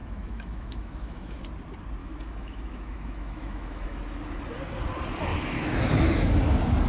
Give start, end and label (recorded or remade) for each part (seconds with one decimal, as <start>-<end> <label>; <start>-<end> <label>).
0.0-1.4 remade; 1.4-2.0 recorded; 2.0-4.0 remade; 4.0-5.3 recorded; 5.3-6.3 remade; 6.3-6.9 recorded